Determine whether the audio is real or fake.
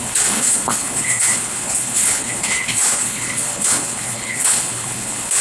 fake